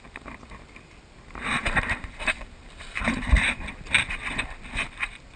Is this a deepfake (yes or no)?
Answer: no